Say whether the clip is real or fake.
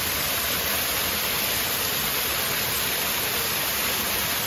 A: real